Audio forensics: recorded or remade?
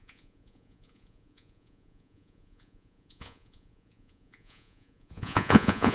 remade